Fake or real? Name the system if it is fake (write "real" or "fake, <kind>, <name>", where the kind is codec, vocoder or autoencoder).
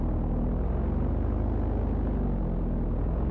real